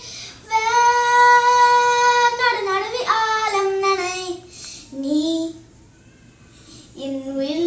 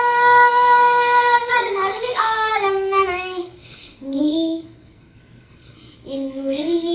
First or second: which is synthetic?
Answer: second